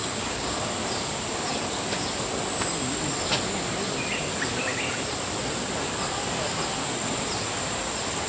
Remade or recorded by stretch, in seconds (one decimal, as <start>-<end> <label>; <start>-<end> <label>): 0.0-0.7 remade; 0.7-8.3 recorded